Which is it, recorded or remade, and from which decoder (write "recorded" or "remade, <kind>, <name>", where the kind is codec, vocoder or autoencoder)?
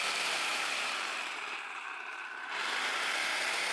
remade, vocoder, BigVGAN v2